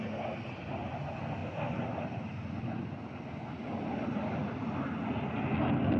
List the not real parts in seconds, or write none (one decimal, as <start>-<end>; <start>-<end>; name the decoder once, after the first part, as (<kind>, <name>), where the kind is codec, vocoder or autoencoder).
none